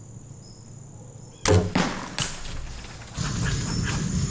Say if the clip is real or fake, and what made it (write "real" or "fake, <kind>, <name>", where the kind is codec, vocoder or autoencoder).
real